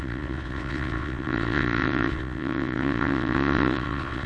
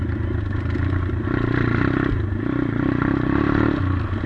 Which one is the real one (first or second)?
second